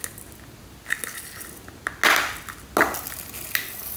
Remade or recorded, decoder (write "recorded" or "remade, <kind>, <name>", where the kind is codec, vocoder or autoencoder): recorded